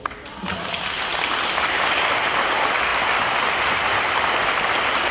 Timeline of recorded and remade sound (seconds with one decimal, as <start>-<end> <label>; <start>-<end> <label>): 0.0-5.1 recorded